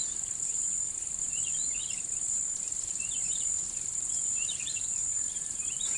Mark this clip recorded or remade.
remade